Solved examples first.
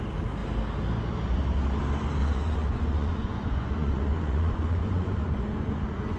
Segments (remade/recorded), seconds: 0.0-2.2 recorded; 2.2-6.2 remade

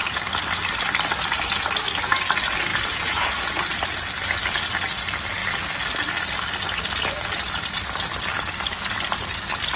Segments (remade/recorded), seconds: 0.0-2.7 recorded; 2.7-3.3 remade; 3.3-9.8 recorded

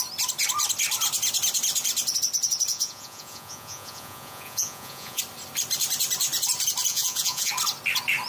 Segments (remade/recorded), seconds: 0.0-2.7 recorded; 2.7-5.2 remade; 5.2-6.9 recorded; 6.9-7.5 remade; 7.5-8.3 recorded

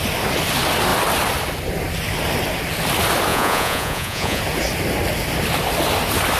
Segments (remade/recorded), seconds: 0.0-3.3 recorded; 3.3-4.4 remade; 4.4-6.4 recorded

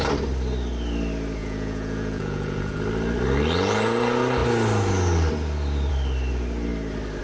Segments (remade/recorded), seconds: 0.0-1.4 recorded; 1.4-2.8 remade; 2.8-7.2 recorded

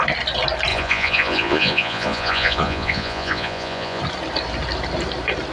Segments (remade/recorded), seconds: 0.0-0.7 recorded; 0.7-4.0 remade; 4.0-5.5 recorded

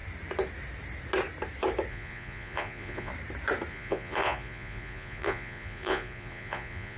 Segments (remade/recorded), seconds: 0.0-1.9 recorded; 1.9-3.1 remade; 3.1-3.7 recorded; 3.7-7.0 remade

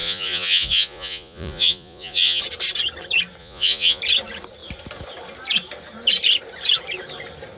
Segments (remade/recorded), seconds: 0.0-2.4 remade; 2.4-3.4 recorded; 3.4-4.0 remade; 4.0-7.6 recorded